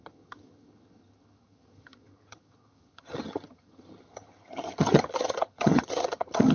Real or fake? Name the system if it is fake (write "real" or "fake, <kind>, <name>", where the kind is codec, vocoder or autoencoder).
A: fake, vocoder, HiFi-GAN